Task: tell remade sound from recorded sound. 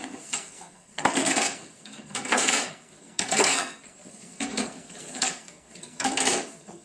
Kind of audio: remade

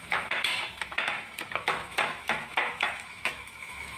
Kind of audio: remade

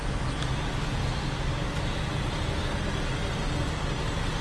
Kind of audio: recorded